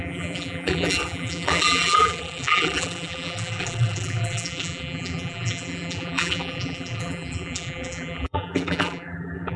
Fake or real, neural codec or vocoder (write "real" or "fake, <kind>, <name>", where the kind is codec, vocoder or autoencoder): fake, vocoder, BigVGAN v2